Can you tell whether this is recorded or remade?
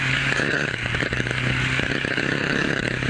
remade